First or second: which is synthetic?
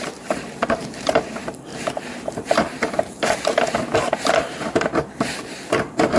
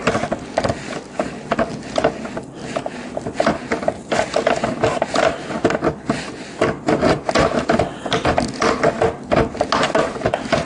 first